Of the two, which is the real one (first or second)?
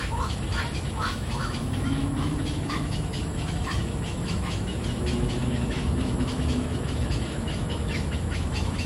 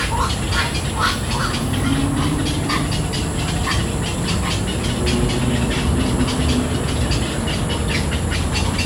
second